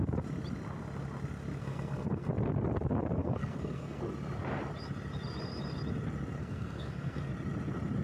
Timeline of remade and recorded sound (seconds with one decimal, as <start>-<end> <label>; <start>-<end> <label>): 0.0-1.6 recorded; 1.6-2.3 remade; 2.3-3.2 recorded; 3.2-4.0 remade; 4.0-6.4 recorded; 6.4-7.3 remade; 7.3-8.0 recorded